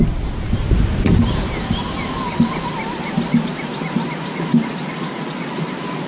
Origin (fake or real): real